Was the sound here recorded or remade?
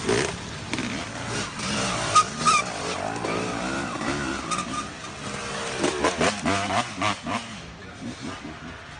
recorded